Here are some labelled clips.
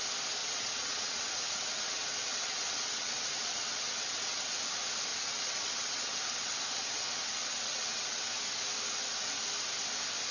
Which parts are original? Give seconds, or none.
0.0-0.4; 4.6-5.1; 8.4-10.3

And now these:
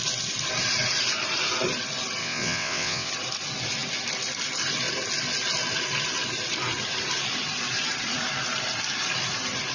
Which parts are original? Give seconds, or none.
0.0-2.2; 3.1-9.7

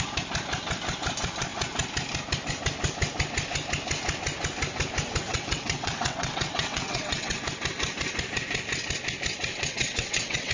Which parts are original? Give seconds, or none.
0.0-5.3; 7.4-9.5

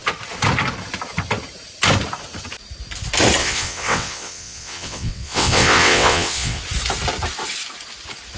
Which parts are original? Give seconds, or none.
0.0-3.4; 6.6-8.4

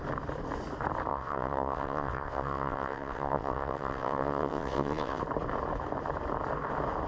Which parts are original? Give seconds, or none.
0.0-1.1; 5.2-7.1

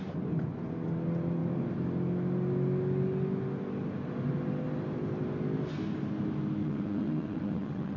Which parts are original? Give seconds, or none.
0.0-6.6